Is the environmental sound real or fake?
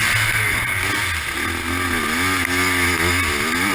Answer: real